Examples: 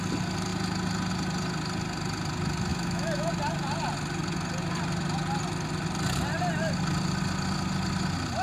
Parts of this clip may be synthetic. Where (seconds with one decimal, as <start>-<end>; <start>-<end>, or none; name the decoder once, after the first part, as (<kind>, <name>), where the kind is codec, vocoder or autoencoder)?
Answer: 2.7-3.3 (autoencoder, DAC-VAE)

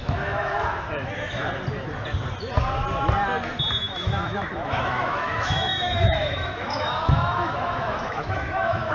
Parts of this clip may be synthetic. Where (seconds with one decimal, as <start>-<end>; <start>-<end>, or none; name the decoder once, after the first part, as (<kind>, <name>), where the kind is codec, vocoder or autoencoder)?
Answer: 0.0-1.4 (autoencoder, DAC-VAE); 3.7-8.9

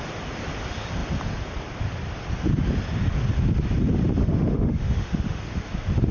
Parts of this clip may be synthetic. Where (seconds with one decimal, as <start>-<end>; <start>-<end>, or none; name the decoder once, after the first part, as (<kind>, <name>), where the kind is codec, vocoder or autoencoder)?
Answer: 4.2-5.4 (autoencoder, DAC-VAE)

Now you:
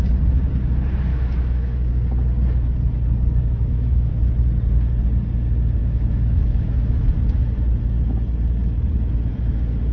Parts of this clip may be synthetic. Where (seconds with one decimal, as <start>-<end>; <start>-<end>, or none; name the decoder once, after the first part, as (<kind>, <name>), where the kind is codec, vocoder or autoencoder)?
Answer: 1.1-1.9 (autoencoder, DAC-VAE); 3.4-4.2; 5.8-7.1